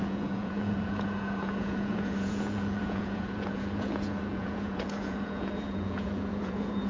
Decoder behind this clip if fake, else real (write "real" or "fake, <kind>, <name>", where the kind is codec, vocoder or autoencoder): fake, vocoder, Vocos